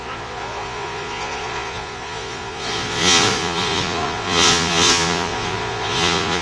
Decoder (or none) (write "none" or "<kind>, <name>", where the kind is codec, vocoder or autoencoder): vocoder, Vocos